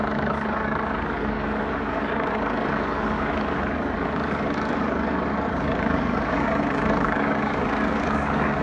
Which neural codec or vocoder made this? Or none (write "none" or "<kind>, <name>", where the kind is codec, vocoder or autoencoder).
codec, DAC